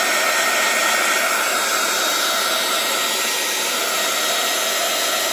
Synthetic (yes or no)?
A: no